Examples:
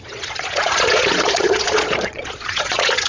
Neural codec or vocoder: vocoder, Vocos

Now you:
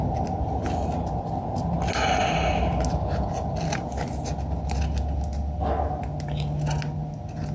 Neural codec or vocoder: none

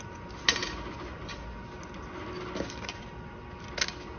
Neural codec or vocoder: none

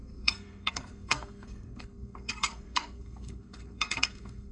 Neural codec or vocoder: codec, SNAC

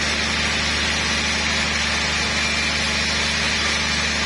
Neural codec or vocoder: none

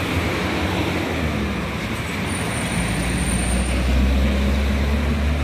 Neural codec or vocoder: none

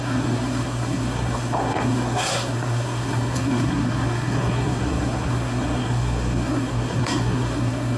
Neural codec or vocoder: codec, SNAC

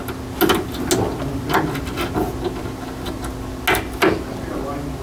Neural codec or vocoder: none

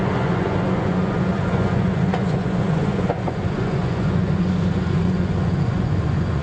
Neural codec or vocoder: vocoder, Vocos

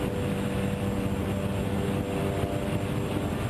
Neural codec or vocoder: none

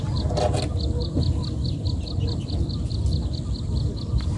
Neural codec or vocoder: none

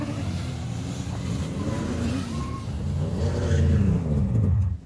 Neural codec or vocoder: none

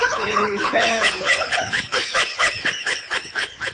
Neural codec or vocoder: codec, HILCodec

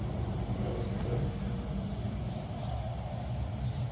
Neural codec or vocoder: none